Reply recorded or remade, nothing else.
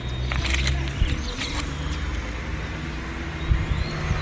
recorded